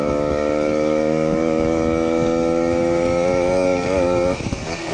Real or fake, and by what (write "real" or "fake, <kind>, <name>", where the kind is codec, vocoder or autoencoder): fake, codec, DAC